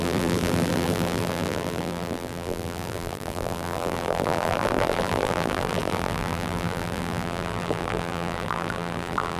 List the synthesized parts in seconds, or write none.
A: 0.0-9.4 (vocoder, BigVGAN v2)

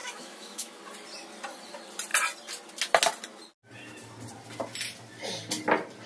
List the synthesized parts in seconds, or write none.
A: 0.0-0.8 (autoencoder, DAC-VAE)

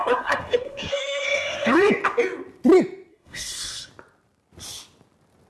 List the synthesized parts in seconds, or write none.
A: 0.0-1.9 (codec, SNAC); 3.1-3.9

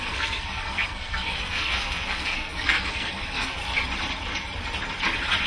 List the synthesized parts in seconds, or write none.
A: 0.0-3.6 (codec, SNAC)

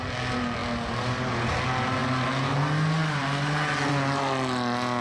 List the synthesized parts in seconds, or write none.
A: none

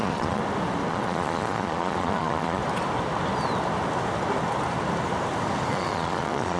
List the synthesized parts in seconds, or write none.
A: 0.0-0.4 (vocoder, Vocos); 0.9-2.6; 5.7-6.6

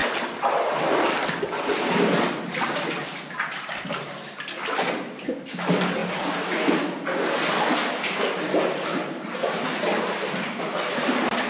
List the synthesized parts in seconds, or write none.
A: none

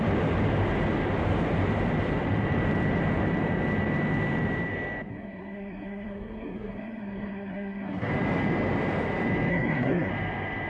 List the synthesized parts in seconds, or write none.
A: 5.1-8.1 (codec, SNAC); 9.5-10.1